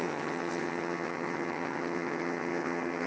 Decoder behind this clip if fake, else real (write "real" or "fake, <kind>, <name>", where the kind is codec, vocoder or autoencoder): fake, vocoder, HiFi-GAN